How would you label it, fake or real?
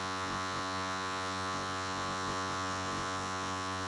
fake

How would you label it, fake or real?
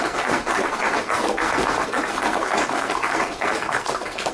fake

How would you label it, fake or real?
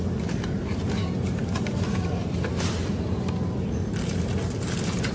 real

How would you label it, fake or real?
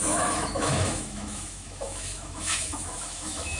fake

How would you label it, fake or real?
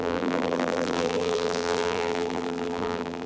fake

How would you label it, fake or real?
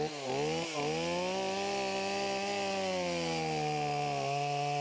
real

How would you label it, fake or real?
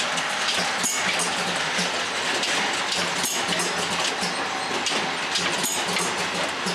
real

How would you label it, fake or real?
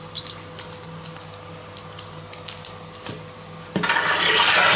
real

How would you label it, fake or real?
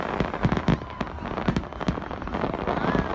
real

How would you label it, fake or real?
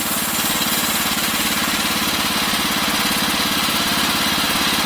real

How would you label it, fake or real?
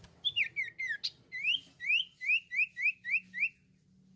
real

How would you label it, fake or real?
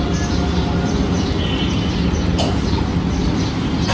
real